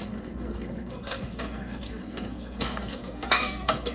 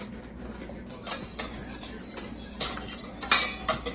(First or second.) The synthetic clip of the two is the first